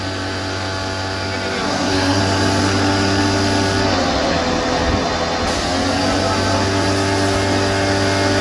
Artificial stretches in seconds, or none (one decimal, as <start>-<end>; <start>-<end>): 1.7-2.2